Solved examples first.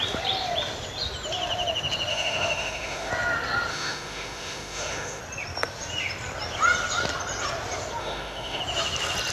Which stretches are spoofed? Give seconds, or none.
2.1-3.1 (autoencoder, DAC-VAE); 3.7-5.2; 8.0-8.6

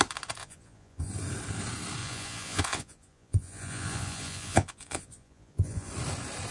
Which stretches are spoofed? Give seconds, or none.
0.4-1.1 (vocoder, Vocos); 2.0-5.9